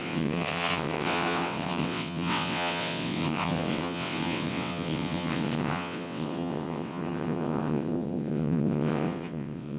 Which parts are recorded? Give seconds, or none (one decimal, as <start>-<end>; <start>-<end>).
none